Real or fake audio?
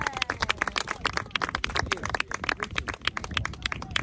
real